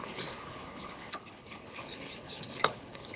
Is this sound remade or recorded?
remade